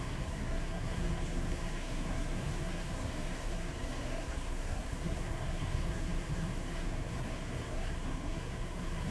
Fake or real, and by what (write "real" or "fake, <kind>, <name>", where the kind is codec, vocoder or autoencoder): fake, codec, SNAC